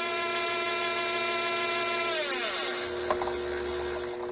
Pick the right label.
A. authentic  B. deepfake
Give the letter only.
A